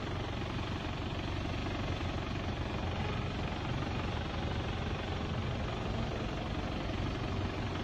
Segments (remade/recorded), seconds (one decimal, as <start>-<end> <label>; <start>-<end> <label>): 0.0-7.8 recorded